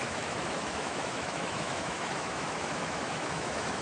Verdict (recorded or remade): remade